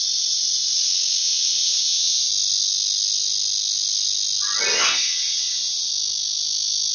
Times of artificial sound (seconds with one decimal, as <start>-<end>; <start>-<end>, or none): 1.2-2.3; 4.7-5.9